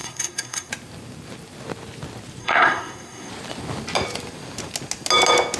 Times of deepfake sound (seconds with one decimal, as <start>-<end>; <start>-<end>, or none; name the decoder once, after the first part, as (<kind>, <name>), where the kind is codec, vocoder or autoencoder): 0.0-0.7 (codec, SNAC); 2.4-3.3

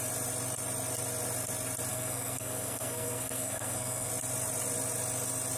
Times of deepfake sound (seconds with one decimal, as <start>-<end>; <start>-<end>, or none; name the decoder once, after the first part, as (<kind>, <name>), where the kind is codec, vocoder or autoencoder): 1.9-4.1 (codec, SNAC)

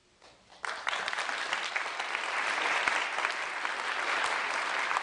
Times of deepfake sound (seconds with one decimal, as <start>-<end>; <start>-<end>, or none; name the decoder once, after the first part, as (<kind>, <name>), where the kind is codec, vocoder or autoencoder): none

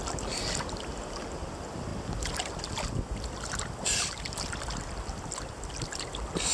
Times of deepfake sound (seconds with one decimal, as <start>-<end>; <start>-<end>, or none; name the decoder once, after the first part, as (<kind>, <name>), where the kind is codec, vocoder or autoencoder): none